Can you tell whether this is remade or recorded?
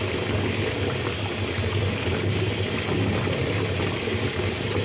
recorded